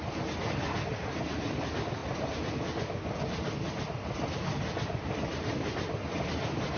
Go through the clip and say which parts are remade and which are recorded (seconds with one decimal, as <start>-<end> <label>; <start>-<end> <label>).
0.0-6.8 recorded